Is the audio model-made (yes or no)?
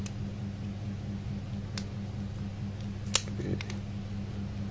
no